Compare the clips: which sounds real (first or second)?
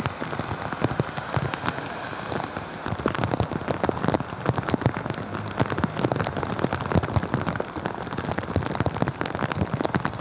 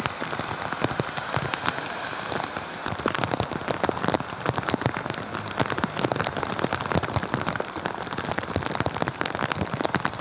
first